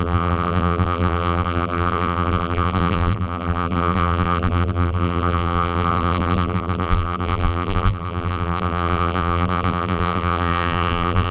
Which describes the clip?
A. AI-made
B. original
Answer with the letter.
A